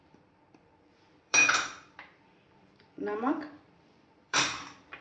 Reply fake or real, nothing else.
fake